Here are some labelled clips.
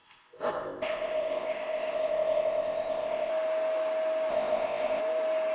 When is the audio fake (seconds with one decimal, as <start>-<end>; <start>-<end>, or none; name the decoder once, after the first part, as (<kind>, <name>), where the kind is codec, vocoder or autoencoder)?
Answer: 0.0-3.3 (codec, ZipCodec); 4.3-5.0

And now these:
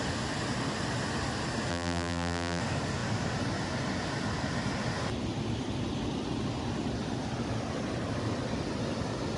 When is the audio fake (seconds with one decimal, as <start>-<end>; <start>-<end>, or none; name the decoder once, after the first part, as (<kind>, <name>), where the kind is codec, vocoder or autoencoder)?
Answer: 1.7-2.6 (vocoder, BigVGAN v2)

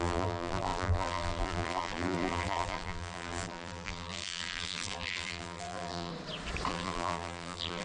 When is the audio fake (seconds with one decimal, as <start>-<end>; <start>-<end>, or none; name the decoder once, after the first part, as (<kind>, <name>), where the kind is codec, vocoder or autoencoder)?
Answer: 0.0-6.1 (vocoder, BigVGAN v2); 6.7-7.8

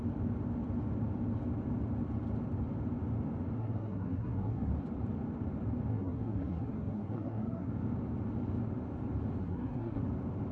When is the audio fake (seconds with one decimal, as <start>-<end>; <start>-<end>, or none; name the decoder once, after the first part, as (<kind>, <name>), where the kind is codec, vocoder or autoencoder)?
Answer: 3.6-4.7 (codec, SNAC); 5.9-7.7; 9.4-10.0

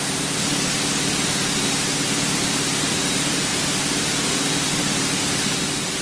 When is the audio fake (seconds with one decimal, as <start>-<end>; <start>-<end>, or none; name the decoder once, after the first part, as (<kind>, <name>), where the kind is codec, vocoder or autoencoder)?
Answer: none

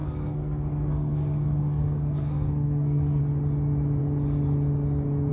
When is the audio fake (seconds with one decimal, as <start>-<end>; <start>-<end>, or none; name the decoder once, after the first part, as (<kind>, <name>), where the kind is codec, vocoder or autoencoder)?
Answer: 0.0-3.2 (codec, SNAC)

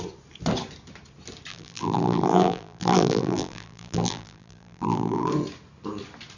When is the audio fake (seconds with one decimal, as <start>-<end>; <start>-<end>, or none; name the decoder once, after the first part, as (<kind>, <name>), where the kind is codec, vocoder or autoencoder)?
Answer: 1.5-5.3 (vocoder, BigVGAN v2)

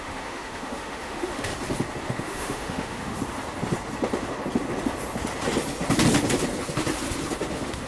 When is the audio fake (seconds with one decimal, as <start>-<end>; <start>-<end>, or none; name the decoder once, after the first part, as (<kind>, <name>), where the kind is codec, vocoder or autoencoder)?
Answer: 0.0-1.5 (autoencoder, DAC-VAE); 2.0-3.2; 7.5-7.9